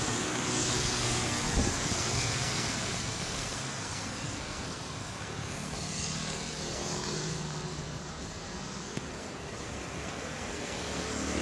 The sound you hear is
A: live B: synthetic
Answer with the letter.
B